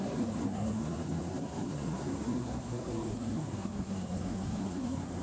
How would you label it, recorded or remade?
remade